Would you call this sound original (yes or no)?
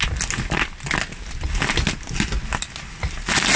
yes